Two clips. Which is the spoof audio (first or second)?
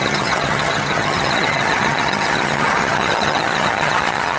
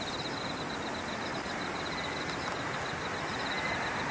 first